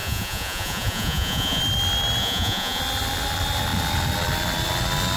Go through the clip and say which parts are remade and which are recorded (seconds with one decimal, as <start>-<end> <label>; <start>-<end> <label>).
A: 0.0-1.6 remade; 1.6-2.2 recorded; 2.2-2.8 remade; 2.8-5.2 recorded